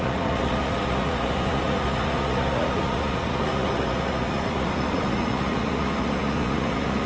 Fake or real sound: fake